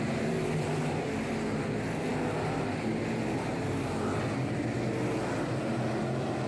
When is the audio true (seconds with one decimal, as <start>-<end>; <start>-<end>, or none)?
0.0-6.5